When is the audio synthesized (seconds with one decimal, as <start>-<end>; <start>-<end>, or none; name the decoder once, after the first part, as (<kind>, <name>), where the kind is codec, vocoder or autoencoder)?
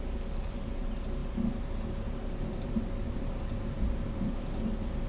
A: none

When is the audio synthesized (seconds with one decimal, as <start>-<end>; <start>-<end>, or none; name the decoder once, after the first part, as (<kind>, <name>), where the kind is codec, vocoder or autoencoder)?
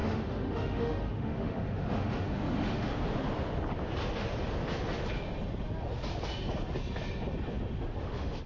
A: 0.0-2.9 (autoencoder, DAC-VAE); 8.0-8.5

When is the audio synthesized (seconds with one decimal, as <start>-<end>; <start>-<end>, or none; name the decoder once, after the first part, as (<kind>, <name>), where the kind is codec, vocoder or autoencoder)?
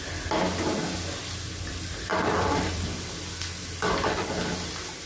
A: 2.1-3.1 (vocoder, BigVGAN v2)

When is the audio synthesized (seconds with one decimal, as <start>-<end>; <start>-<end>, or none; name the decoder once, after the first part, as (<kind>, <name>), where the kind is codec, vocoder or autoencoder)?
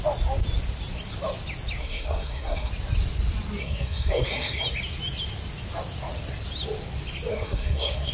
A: 1.8-2.7 (codec, SNAC); 3.6-4.6; 7.3-8.1